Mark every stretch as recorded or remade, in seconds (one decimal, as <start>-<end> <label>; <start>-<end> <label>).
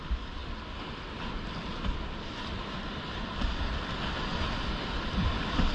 0.0-5.7 recorded